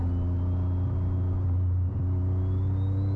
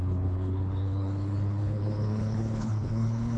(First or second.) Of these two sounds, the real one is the first